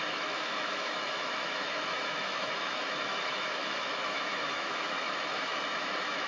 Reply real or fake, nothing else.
fake